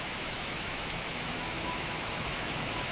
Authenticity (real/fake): fake